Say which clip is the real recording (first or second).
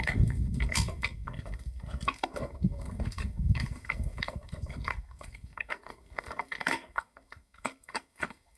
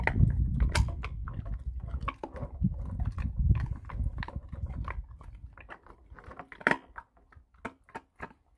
second